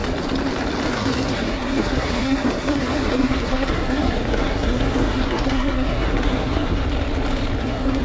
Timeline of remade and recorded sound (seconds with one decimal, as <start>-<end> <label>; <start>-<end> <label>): 0.0-0.9 recorded; 0.9-6.8 remade; 6.8-7.6 recorded; 7.6-8.0 remade